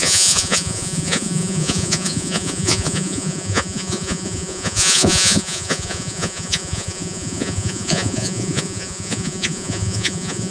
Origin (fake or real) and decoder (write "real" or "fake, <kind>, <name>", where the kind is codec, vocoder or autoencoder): fake, vocoder, Vocos